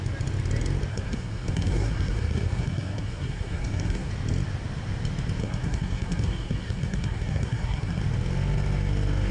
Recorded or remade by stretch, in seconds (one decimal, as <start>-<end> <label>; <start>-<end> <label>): 0.0-0.9 recorded; 0.9-4.1 remade; 4.1-5.4 recorded; 5.4-8.0 remade; 8.0-9.3 recorded